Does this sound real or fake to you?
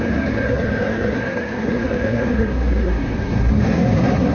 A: fake